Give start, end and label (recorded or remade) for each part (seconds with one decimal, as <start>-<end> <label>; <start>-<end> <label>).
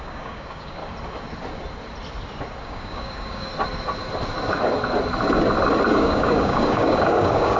0.0-0.8 remade; 0.8-2.6 recorded; 2.6-3.5 remade; 3.5-5.9 recorded; 5.9-7.6 remade